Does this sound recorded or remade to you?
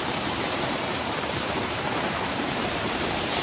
remade